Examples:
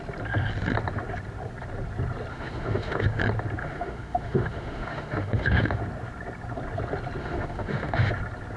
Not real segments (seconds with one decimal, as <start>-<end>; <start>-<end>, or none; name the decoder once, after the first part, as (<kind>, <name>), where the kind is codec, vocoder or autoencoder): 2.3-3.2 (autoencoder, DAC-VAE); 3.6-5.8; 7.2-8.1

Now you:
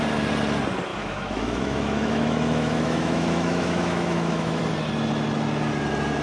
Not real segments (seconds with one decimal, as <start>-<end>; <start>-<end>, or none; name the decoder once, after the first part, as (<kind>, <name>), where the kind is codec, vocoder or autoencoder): 0.9-4.6 (autoencoder, DAC-VAE)

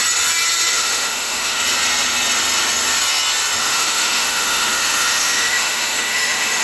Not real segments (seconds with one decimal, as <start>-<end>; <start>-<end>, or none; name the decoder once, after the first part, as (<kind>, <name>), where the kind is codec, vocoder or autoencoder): 0.7-1.6 (autoencoder, DAC-VAE); 3.6-6.6

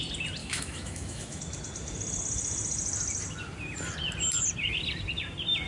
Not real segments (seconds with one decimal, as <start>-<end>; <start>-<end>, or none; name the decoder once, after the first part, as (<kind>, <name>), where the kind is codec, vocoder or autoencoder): 0.4-1.4 (autoencoder, DAC-VAE)